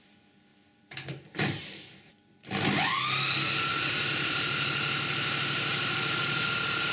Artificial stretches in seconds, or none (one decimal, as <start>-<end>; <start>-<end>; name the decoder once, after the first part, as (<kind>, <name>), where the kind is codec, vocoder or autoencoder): none